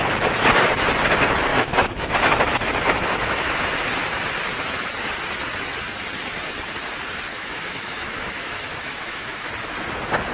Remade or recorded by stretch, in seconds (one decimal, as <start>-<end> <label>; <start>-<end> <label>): 0.0-1.5 recorded; 1.5-3.7 remade; 3.7-7.3 recorded; 7.3-9.5 remade; 9.5-10.3 recorded